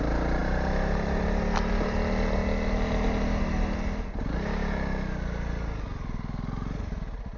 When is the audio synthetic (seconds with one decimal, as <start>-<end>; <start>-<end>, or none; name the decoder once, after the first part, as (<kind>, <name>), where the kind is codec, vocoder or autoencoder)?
none